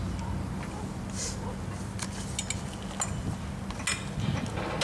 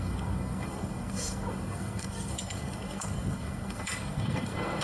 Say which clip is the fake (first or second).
second